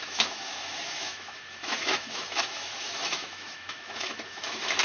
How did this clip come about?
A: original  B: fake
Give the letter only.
B